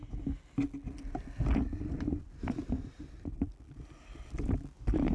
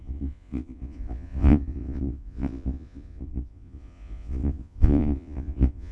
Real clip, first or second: first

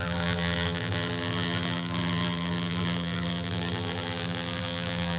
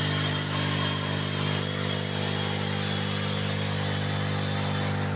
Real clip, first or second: second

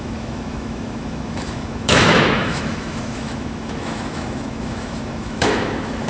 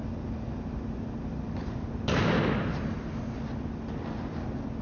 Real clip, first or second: second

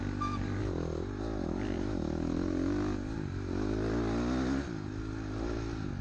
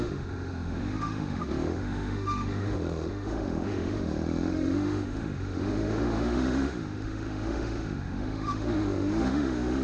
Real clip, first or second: first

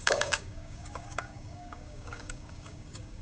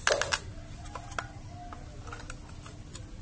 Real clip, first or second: second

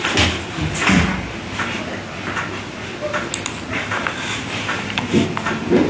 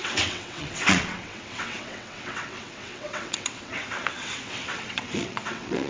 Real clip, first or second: first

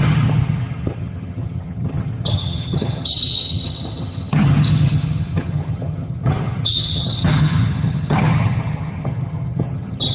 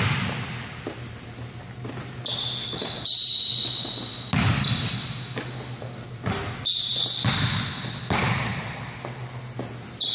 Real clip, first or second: second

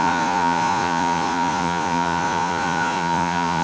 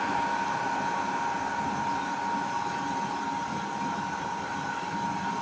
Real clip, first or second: second